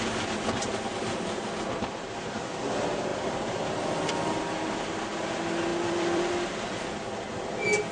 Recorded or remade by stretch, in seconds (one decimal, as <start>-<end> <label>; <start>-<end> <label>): 0.0-3.1 recorded; 3.1-4.1 remade; 4.1-5.7 recorded; 5.7-7.5 remade; 7.5-7.9 recorded